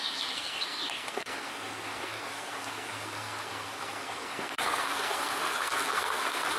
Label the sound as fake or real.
fake